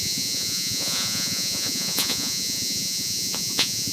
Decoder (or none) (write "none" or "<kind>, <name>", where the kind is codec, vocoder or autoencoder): vocoder, Vocos